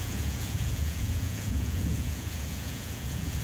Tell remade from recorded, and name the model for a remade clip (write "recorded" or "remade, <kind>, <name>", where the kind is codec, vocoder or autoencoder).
remade, vocoder, Vocos